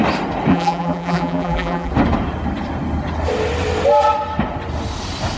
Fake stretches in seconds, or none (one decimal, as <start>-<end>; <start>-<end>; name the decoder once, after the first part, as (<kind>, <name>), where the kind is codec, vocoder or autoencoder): 0.5-1.9 (vocoder, BigVGAN v2)